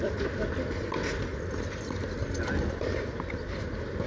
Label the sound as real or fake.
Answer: real